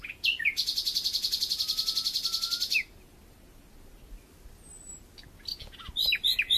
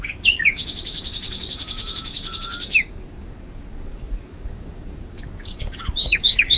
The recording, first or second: first